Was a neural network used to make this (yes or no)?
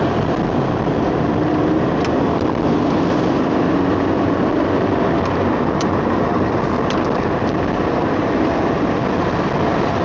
yes